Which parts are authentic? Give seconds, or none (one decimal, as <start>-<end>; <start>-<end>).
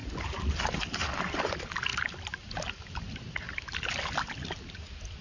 0.0-5.2